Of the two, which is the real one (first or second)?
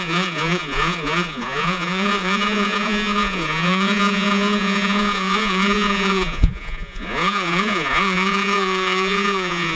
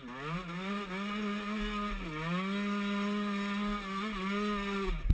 second